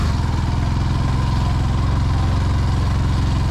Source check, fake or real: real